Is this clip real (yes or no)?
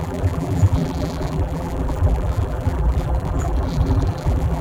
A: no